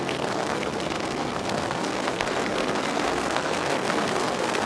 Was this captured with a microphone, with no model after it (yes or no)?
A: no